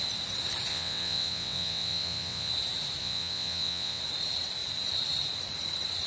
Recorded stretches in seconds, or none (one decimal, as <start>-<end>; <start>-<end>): 0.0-0.7; 2.5-3.0; 4.0-6.1